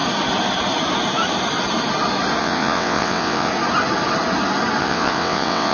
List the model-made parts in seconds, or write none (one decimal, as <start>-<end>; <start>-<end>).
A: 2.4-3.5; 4.8-5.7